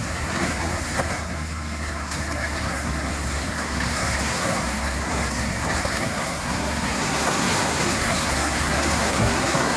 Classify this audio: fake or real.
fake